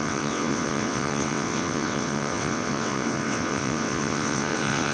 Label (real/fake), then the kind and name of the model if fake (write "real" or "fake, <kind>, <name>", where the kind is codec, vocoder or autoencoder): fake, vocoder, WaveNeXt